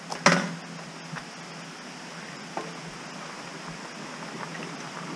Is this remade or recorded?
recorded